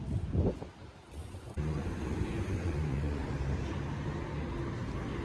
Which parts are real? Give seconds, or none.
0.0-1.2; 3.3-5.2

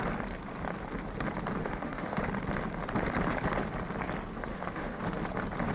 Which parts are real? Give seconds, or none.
0.0-1.6; 2.2-4.5; 5.0-5.7

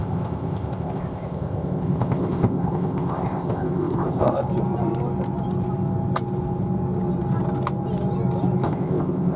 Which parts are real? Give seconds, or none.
4.5-8.6

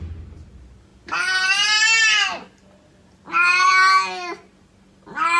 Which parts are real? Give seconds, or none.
0.0-5.4

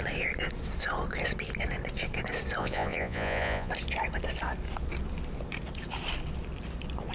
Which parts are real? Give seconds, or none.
0.0-2.6; 3.7-7.1

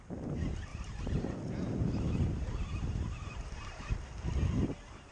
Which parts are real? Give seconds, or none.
0.0-0.7; 3.8-5.1

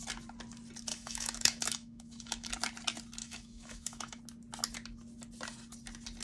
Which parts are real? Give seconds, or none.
0.0-0.9; 2.5-3.2; 4.2-6.2

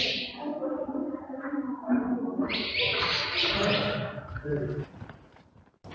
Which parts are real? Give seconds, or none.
0.0-5.9